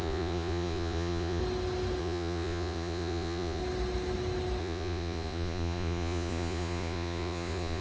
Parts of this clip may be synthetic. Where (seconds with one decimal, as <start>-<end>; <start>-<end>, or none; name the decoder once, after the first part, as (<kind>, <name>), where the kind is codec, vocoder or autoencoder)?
0.0-1.4 (vocoder, Vocos); 2.0-3.6; 4.6-7.8